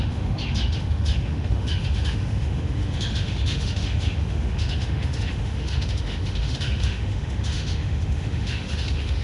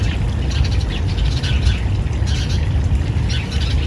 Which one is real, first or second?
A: second